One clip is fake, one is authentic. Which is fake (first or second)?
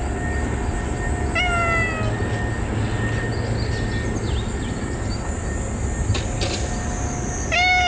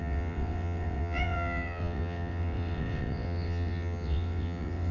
second